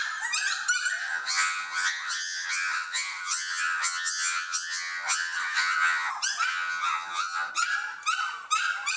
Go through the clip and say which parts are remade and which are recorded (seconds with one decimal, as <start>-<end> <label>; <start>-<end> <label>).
0.0-1.0 recorded; 1.0-6.1 remade; 6.1-6.5 recorded; 6.5-7.5 remade; 7.5-9.0 recorded